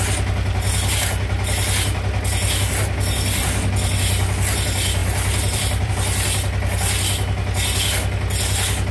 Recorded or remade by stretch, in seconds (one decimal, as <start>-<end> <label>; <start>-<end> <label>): 0.0-5.0 recorded; 5.0-5.9 remade; 5.9-8.9 recorded